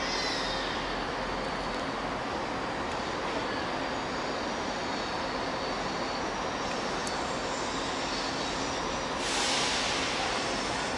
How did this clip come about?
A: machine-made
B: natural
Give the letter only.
B